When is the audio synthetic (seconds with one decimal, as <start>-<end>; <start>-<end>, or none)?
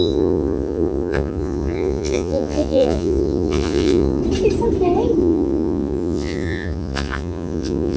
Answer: 0.0-4.2; 5.2-8.0